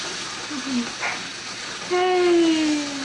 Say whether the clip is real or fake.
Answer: real